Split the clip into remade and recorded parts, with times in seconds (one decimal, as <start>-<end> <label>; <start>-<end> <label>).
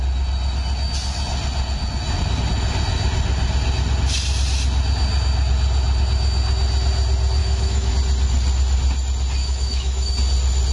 0.0-7.4 recorded; 7.4-7.9 remade; 7.9-9.4 recorded; 9.4-10.1 remade; 10.1-10.7 recorded